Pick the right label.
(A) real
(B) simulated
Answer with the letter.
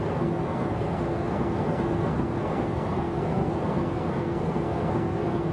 B